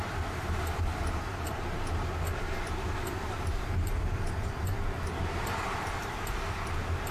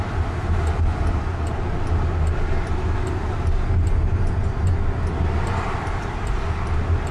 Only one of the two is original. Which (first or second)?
second